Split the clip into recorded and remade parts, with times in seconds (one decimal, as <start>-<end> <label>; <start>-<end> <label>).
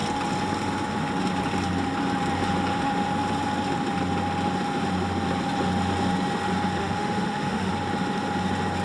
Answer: 0.0-6.8 recorded; 6.8-7.7 remade; 7.7-8.8 recorded